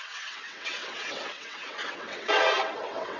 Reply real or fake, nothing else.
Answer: fake